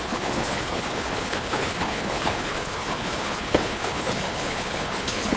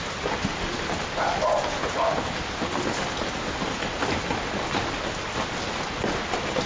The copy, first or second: first